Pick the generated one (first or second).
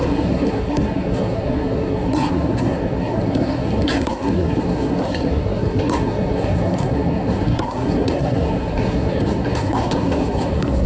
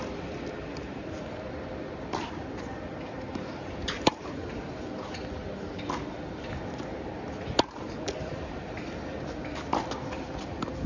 first